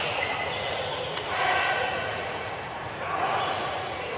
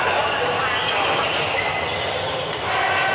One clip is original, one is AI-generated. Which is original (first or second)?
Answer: second